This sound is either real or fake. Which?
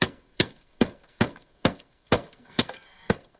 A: fake